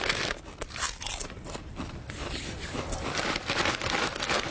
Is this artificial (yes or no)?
no